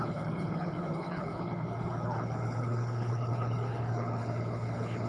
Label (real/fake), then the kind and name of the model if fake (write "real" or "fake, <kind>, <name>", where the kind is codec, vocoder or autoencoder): fake, codec, HILCodec